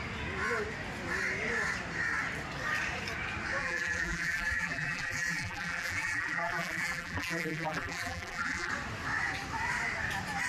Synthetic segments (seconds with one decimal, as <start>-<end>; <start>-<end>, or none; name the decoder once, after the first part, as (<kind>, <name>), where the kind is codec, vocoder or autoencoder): 3.6-8.7 (vocoder, BigVGAN v2)